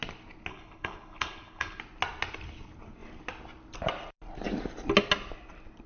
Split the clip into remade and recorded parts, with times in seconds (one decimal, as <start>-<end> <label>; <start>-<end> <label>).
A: 0.0-0.5 recorded; 0.5-1.8 remade; 1.8-5.9 recorded